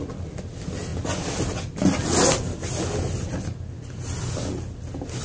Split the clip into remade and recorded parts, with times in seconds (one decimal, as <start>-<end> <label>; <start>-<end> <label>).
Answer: 0.0-5.2 recorded